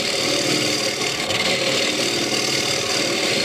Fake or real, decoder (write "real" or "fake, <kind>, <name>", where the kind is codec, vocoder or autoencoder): real